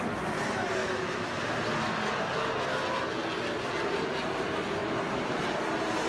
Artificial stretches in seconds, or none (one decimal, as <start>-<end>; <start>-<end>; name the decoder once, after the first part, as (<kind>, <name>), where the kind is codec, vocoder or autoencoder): 0.8-1.4 (autoencoder, DAC-VAE)